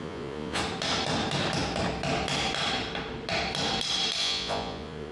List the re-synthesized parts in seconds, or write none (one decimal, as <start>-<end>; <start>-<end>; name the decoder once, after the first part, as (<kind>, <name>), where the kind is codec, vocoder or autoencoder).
0.0-0.6 (vocoder, Vocos); 4.2-5.1